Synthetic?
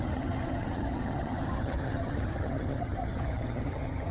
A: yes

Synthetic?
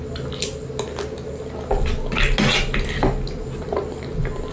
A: no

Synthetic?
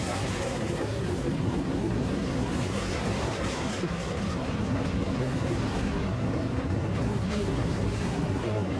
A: yes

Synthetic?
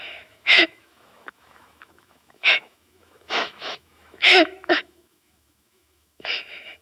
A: yes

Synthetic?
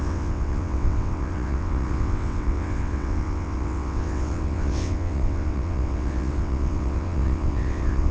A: yes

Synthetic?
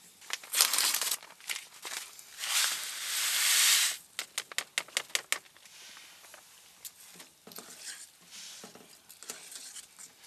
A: no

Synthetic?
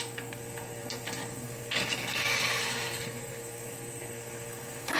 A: yes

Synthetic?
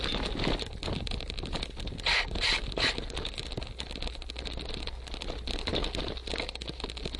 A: no